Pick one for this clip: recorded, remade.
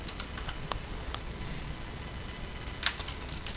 recorded